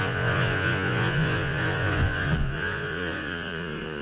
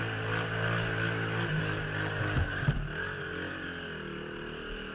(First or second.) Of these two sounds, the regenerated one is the first